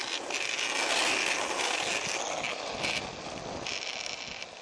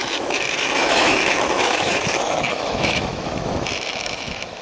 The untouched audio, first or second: first